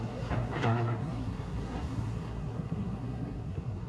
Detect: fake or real fake